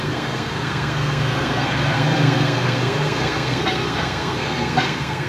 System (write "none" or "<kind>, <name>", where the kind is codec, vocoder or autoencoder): codec, SNAC